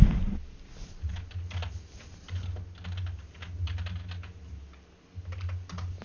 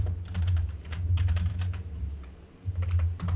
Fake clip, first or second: second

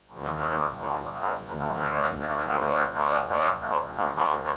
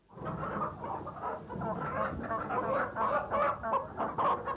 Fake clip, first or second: first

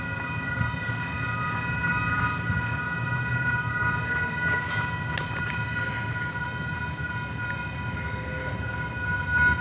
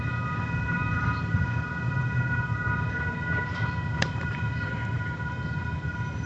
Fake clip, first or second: second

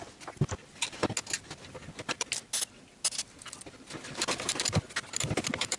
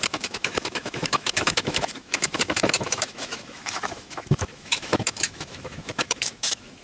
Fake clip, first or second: second